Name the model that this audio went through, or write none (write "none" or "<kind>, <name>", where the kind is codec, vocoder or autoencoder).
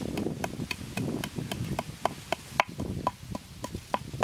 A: none